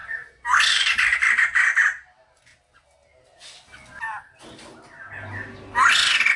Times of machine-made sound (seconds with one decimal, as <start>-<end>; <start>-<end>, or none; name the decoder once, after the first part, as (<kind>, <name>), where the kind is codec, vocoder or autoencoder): 0.7-2.5 (vocoder, BigVGAN v2)